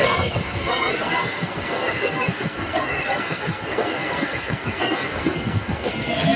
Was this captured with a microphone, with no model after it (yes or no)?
no